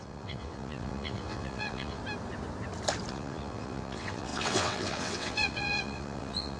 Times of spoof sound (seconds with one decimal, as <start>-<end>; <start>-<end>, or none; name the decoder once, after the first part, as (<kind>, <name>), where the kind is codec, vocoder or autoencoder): 0.0-2.0 (vocoder, WaveNeXt); 3.1-6.6

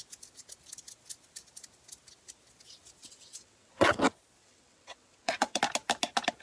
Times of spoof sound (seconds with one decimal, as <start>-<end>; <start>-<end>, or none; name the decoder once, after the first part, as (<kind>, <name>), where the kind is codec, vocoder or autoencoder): 3.0-4.0 (vocoder, WaveNeXt); 4.4-5.6

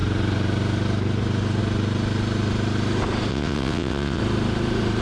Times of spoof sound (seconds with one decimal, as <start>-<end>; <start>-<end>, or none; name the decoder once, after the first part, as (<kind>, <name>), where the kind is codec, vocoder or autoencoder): 3.3-4.2 (vocoder, WaveNeXt)